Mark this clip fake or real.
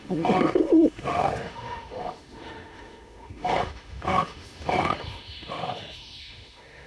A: fake